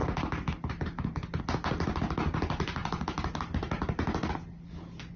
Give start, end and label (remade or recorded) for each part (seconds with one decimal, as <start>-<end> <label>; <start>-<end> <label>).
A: 0.0-5.2 recorded